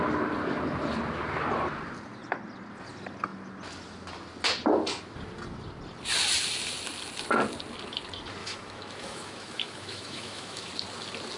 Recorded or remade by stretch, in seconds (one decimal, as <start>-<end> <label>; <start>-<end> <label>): 0.0-8.4 recorded; 8.4-10.7 remade; 10.7-11.4 recorded